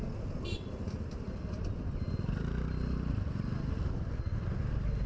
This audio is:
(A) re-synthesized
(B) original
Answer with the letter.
B